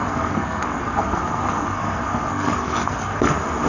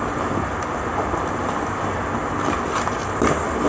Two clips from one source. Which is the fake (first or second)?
first